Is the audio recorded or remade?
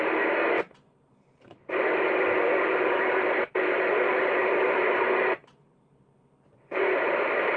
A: remade